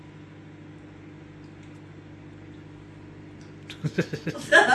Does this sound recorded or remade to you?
recorded